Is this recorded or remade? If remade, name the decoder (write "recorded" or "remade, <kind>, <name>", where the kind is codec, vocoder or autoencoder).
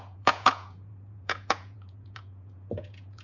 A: remade, vocoder, Vocos